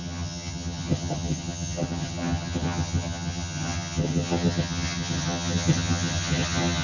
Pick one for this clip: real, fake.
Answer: fake